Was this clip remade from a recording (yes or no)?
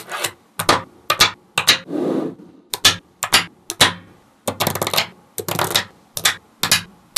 no